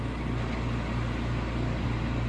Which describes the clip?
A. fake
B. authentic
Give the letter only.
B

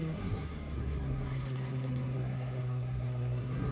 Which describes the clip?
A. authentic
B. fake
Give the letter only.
B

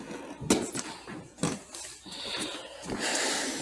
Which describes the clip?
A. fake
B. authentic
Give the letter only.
B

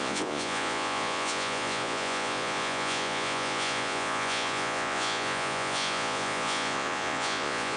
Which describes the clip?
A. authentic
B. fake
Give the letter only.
B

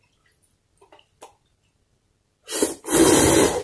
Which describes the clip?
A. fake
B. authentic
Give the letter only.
B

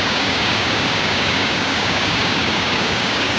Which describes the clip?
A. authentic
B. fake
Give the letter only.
B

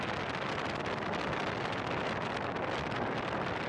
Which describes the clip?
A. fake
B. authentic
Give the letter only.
B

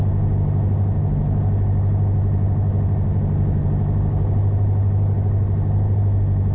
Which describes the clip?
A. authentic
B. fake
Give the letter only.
A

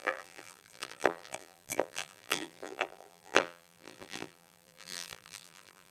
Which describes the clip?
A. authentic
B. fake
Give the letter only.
B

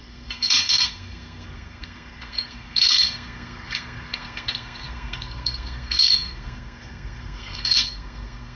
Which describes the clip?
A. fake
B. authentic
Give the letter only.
A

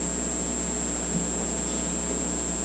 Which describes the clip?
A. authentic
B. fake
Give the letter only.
A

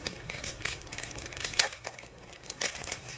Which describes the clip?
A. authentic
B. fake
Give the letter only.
B